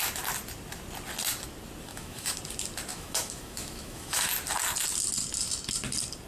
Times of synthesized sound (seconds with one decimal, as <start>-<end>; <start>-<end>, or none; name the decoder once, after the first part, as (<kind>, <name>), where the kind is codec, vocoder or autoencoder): 1.9-2.4 (autoencoder, DAC-VAE); 2.9-4.3